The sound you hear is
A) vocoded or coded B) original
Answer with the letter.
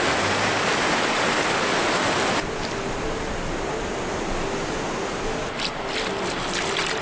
B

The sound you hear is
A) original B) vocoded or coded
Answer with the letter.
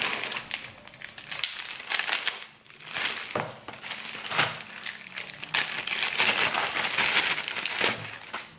A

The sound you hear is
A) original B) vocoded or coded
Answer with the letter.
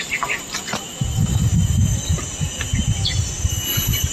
A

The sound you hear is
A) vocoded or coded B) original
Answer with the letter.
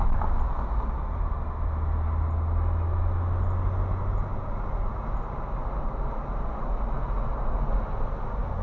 B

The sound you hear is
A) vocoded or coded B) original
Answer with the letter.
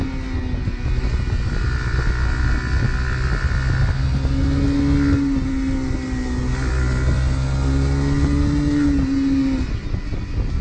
B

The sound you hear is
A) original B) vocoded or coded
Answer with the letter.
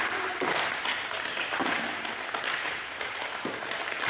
A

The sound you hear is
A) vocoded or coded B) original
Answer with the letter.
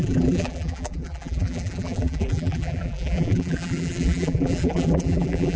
A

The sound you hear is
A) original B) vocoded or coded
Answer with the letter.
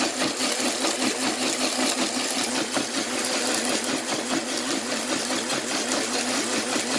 A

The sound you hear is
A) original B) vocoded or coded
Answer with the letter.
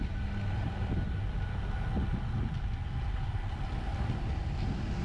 A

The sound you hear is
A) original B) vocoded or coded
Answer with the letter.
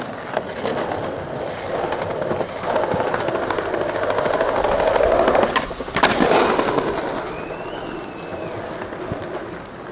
A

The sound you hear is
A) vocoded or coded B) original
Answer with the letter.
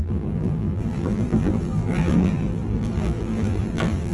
A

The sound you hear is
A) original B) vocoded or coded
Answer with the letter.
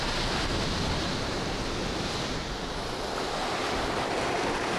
A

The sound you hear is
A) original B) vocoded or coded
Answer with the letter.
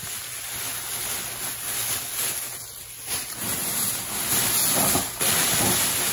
A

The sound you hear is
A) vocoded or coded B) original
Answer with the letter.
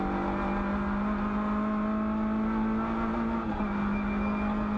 B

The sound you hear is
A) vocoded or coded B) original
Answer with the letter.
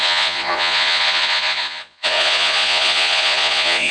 A